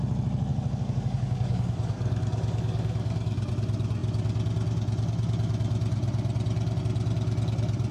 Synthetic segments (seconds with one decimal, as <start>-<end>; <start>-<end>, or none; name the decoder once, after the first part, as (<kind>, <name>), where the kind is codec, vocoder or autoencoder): 0.5-3.5 (codec, DAC)